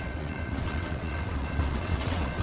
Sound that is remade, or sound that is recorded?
remade